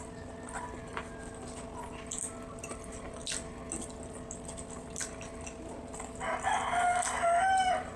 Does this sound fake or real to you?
real